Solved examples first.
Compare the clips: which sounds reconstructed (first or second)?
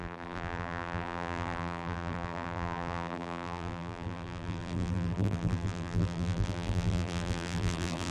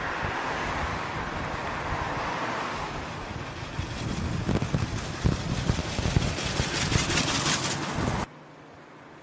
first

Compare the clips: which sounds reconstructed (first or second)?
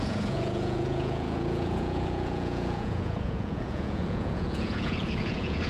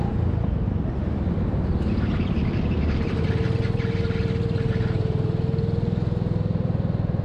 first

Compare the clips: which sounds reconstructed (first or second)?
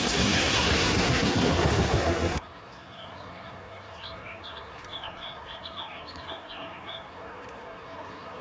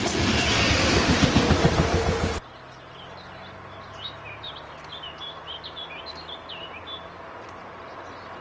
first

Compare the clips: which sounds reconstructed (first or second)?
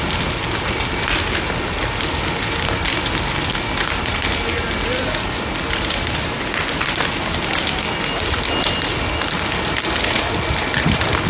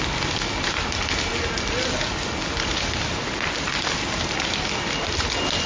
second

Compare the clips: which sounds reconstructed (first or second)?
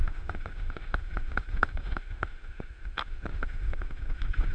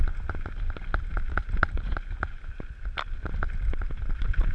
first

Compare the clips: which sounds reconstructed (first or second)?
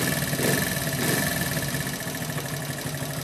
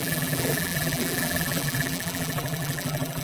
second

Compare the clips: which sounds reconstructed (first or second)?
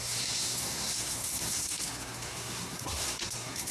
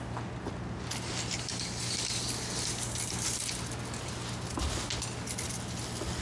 first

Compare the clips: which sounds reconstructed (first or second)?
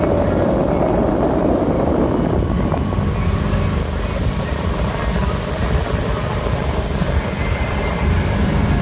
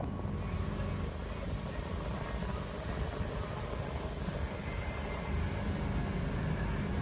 first